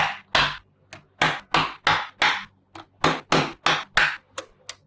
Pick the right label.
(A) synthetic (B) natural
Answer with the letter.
B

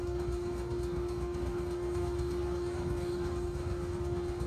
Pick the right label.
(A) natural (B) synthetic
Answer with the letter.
B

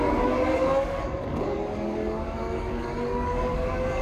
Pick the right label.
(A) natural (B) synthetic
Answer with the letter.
B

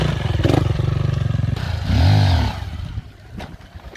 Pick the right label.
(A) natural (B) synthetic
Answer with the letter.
A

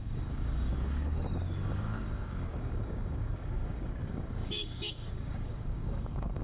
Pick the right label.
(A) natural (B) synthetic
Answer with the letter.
B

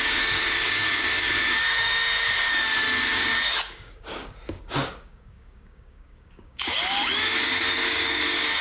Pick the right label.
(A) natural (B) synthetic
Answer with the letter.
B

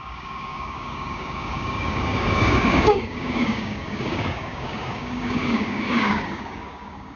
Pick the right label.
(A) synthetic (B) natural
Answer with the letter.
A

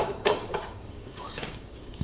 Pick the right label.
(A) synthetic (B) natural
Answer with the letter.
A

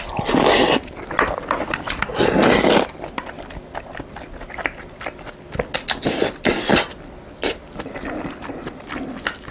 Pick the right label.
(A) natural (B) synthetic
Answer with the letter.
A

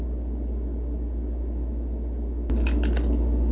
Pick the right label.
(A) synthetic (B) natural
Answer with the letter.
B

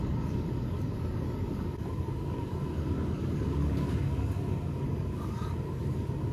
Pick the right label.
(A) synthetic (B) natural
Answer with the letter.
A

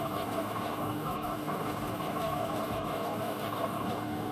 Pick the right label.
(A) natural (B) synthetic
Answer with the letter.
B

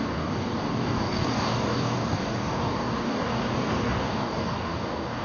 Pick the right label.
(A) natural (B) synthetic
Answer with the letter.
B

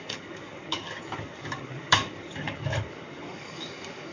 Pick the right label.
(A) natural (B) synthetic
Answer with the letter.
B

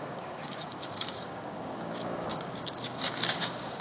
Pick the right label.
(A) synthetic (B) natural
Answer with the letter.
A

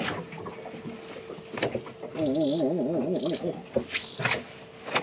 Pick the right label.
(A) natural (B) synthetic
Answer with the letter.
A